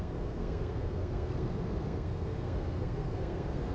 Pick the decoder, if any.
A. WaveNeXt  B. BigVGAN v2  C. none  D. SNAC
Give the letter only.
D